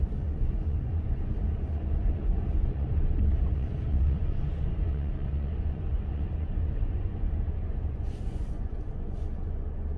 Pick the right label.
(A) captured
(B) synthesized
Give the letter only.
B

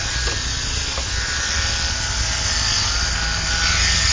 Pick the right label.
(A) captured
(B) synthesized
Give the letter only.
A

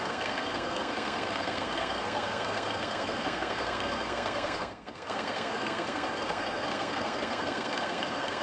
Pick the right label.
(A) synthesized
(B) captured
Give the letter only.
A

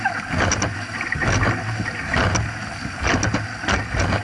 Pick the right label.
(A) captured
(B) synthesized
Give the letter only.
A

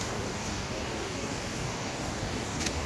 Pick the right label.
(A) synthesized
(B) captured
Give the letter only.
A